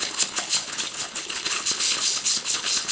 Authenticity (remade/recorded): remade